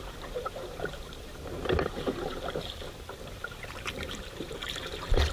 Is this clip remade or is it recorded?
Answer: remade